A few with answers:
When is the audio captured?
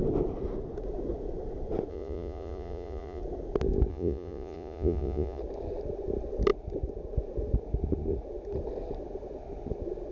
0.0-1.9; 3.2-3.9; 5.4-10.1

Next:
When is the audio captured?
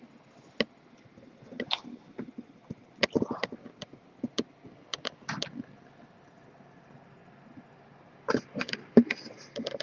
0.0-9.8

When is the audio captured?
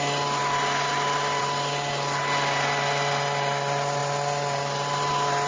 0.0-5.5